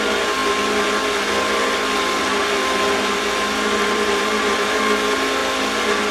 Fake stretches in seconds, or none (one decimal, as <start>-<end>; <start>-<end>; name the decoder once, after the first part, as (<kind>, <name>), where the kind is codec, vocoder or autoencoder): none